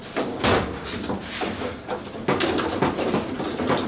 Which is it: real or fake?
real